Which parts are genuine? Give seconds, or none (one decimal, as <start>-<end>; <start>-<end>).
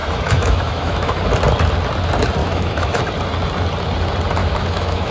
1.2-2.4; 3.0-4.4